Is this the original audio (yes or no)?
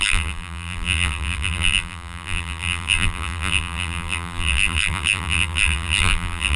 no